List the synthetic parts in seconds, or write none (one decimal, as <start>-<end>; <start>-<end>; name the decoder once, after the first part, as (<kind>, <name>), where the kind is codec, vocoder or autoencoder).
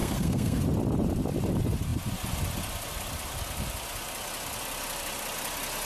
0.0-0.6 (codec, SNAC)